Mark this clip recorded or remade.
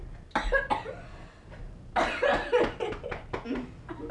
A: recorded